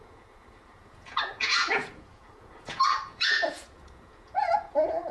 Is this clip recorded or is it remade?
remade